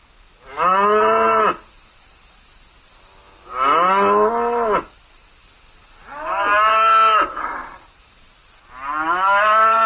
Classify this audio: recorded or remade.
recorded